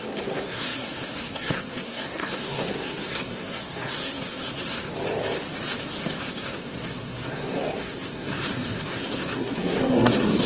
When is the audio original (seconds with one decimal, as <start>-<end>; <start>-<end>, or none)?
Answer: 4.8-6.3